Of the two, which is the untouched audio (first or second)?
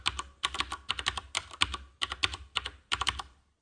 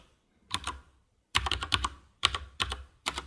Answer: first